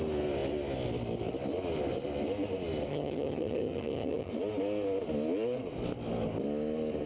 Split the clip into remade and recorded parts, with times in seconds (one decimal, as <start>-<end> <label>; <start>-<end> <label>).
0.0-2.9 recorded; 2.9-4.3 remade; 4.3-7.1 recorded